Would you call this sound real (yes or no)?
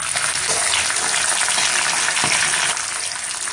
yes